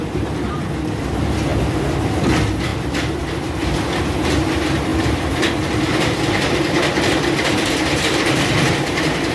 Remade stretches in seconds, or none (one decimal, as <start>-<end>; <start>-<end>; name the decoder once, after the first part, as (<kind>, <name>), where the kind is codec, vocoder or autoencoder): 1.5-2.3 (vocoder, BigVGAN v2); 2.7-4.0; 4.9-9.3